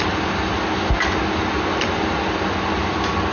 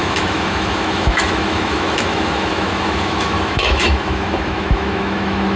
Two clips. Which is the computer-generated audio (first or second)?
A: second